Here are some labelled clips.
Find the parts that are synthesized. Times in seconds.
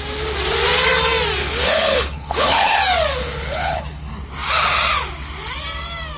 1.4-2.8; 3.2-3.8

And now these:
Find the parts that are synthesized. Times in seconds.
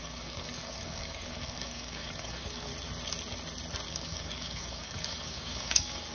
0.0-2.7; 3.9-6.1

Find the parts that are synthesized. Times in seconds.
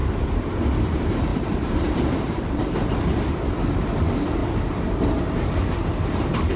0.0-0.5; 1.3-3.3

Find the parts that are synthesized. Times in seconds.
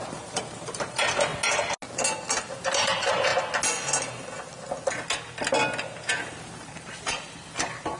0.0-1.3; 2.6-3.3; 6.3-8.0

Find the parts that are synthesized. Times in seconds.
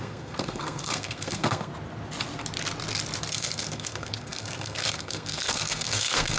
0.0-1.7; 3.3-6.4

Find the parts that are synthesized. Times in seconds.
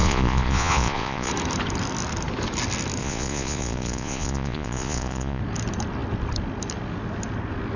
0.0-1.3; 3.0-5.4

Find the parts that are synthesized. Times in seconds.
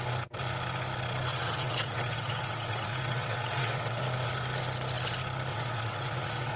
1.3-4.0; 5.5-6.6